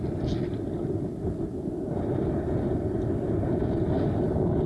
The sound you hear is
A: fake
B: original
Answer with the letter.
B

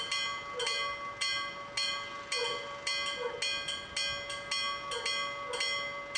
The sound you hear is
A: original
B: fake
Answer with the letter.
A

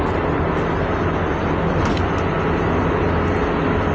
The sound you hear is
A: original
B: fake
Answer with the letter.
A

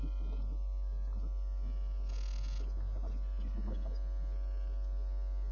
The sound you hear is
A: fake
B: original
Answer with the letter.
B